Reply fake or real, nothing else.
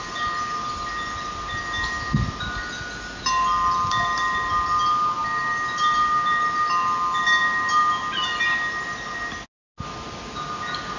real